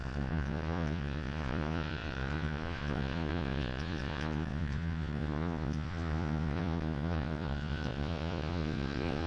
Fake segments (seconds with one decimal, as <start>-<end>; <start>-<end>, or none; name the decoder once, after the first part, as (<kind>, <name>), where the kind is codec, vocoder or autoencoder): 0.0-9.3 (vocoder, Vocos)